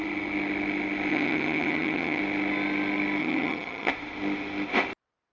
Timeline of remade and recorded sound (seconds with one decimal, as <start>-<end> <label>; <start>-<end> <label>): 0.0-1.1 recorded; 1.1-2.2 remade; 2.2-3.2 recorded; 3.2-3.9 remade; 3.9-5.3 recorded

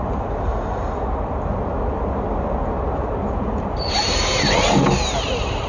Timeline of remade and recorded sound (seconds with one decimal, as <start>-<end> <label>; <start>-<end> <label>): 0.0-0.5 remade; 0.5-3.4 recorded; 3.4-5.7 remade